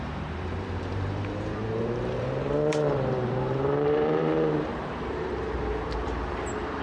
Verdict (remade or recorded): remade